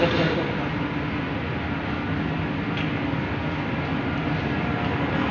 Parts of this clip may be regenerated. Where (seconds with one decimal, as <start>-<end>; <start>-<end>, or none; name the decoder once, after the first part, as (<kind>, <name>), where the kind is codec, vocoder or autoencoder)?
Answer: none